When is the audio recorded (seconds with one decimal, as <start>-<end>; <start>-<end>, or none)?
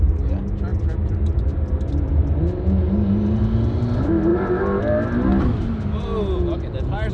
0.0-7.1